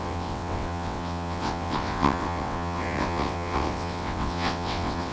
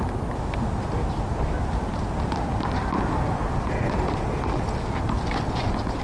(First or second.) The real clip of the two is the second